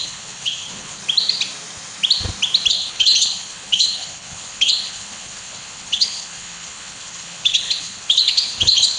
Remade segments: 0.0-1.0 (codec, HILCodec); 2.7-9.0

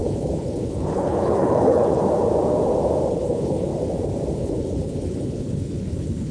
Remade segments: 0.0-2.0 (codec, HILCodec); 3.1-3.7; 4.3-6.3

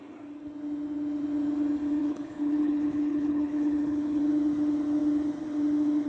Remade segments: 2.0-4.2 (codec, HILCodec)

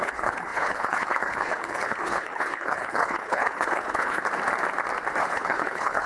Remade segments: 0.0-4.2 (codec, HILCodec); 5.2-6.1

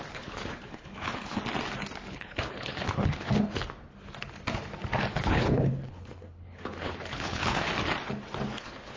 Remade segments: 0.0-1.4 (codec, HILCodec); 2.1-3.6; 5.1-7.7; 8.5-9.0